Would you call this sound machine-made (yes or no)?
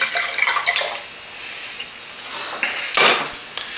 yes